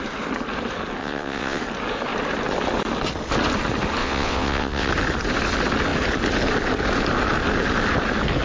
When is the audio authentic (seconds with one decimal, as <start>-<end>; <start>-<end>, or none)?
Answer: 0.0-1.0; 1.6-4.0; 4.9-8.4